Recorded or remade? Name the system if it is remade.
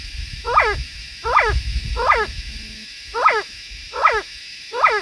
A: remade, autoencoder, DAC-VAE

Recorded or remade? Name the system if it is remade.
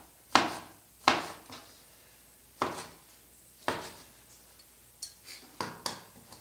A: recorded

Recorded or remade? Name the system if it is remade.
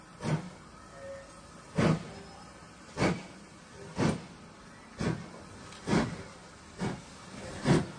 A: recorded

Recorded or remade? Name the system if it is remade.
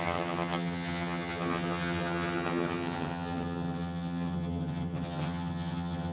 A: remade, vocoder, HiFi-GAN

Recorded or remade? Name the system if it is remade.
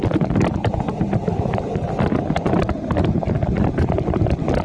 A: recorded